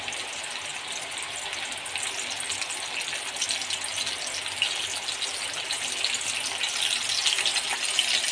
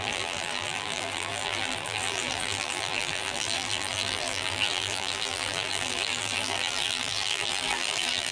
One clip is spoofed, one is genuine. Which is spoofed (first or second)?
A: second